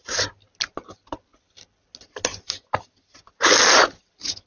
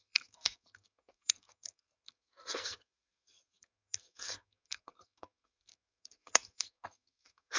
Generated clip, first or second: second